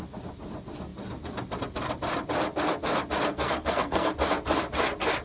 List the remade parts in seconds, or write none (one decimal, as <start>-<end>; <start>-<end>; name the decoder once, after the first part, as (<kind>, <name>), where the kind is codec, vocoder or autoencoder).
3.3-4.1 (codec, SNAC)